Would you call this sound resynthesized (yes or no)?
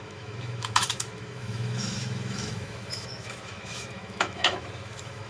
yes